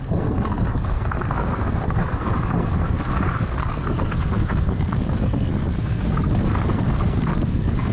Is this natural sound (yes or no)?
no